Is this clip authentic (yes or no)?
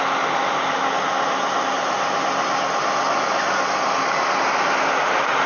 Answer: yes